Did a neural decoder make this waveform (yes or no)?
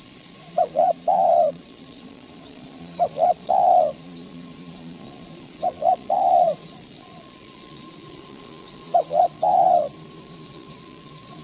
yes